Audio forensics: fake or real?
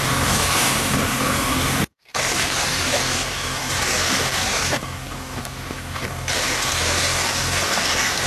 fake